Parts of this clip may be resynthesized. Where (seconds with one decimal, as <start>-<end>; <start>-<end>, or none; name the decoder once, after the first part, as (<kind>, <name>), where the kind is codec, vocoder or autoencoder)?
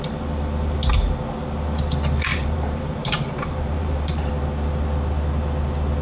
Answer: 2.3-4.3 (vocoder, BigVGAN v2)